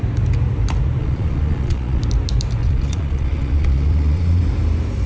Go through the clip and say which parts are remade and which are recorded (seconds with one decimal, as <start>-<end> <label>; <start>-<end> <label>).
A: 0.0-1.0 recorded; 1.0-2.0 remade; 2.0-2.6 recorded; 2.6-4.4 remade; 4.4-5.1 recorded